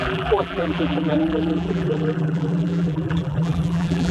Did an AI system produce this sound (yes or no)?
yes